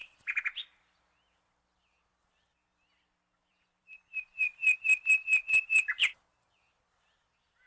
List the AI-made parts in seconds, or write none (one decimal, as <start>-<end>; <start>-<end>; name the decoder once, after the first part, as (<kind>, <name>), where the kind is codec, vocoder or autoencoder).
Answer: 0.0-7.7 (vocoder, BigVGAN v2)